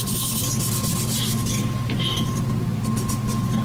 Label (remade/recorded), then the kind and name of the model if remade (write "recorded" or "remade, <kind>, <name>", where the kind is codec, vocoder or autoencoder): recorded